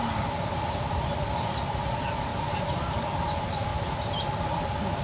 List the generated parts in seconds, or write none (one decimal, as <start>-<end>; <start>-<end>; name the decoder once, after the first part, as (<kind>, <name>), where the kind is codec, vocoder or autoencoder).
2.3-2.9 (vocoder, BigVGAN v2)